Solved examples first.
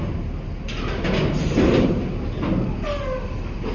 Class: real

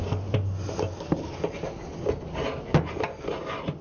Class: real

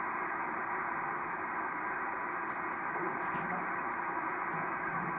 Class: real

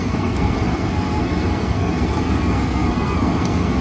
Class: fake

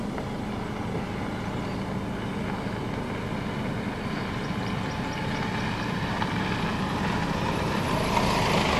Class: real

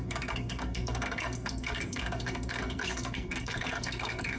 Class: fake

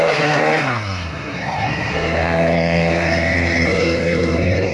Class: fake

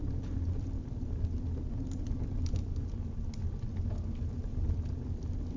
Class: real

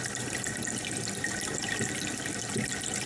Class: real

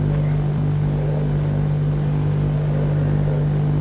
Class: real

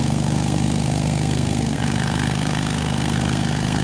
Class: fake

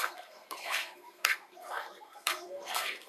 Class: fake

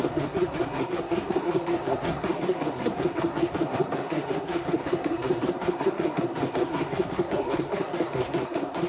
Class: fake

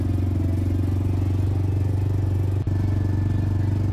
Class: real